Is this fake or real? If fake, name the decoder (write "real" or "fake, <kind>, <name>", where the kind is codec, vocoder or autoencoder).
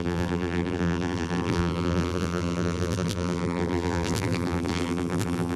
fake, vocoder, BigVGAN v2